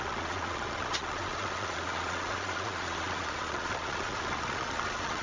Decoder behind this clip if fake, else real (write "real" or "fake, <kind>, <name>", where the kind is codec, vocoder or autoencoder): fake, vocoder, Vocos